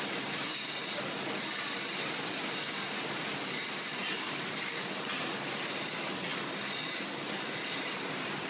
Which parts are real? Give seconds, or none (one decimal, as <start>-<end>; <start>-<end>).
0.0-3.6; 4.1-8.5